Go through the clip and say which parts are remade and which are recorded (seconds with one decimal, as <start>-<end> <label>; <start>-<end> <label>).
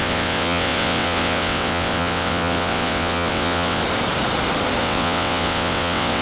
0.0-3.8 remade; 3.8-4.8 recorded; 4.8-6.2 remade